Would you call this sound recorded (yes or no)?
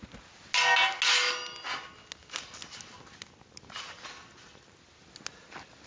yes